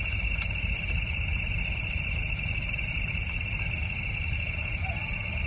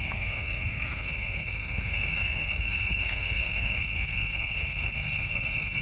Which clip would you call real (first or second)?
first